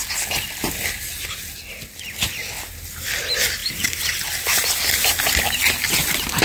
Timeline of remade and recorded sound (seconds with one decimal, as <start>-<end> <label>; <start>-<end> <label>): 0.0-3.6 recorded; 3.6-4.3 remade; 4.3-6.4 recorded